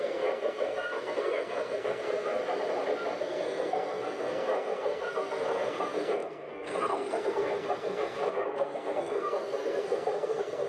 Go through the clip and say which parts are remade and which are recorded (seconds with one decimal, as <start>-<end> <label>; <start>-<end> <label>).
0.0-2.4 remade; 2.4-3.2 recorded; 3.2-10.7 remade

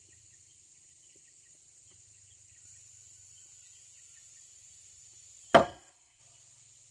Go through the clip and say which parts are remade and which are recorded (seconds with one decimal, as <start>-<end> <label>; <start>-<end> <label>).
0.0-5.6 recorded; 5.6-6.2 remade; 6.2-6.9 recorded

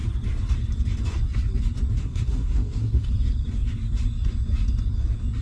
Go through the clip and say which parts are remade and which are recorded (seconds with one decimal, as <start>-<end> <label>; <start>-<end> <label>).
0.0-2.0 recorded; 2.0-3.1 remade; 3.1-5.4 recorded

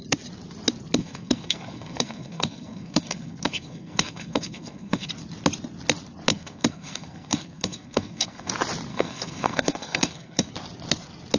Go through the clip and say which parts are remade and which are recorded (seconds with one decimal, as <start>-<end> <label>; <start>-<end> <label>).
0.0-1.0 recorded; 1.0-5.1 remade; 5.1-6.3 recorded; 6.3-8.5 remade; 8.5-8.9 recorded; 8.9-10.5 remade; 10.5-11.4 recorded